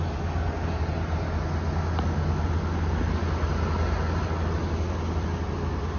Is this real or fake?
real